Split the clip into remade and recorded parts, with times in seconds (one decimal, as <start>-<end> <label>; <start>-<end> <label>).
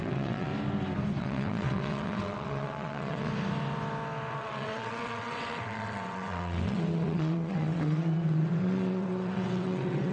0.0-0.5 remade; 0.5-1.2 recorded; 1.2-3.3 remade; 3.3-4.3 recorded; 4.3-10.1 remade